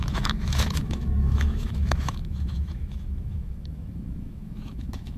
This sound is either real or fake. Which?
fake